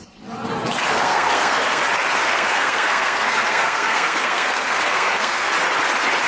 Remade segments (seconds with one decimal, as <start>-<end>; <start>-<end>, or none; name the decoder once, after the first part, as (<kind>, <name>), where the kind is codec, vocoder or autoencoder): 0.9-1.8 (codec, SNAC); 2.2-5.5